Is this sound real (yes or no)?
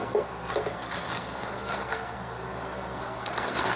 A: no